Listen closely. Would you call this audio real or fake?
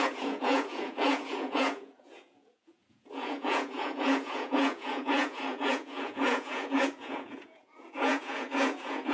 fake